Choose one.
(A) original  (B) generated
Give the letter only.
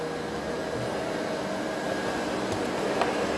A